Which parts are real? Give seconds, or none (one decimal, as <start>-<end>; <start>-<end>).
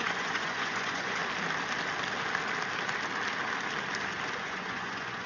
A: 1.2-4.4